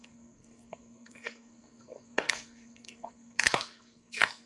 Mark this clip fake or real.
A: fake